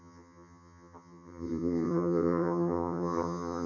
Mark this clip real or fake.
fake